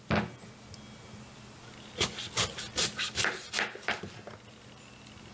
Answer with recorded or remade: recorded